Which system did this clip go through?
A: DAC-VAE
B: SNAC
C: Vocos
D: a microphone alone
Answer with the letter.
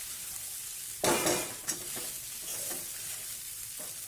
D